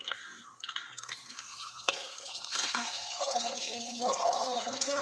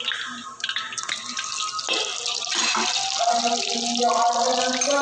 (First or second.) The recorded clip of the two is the second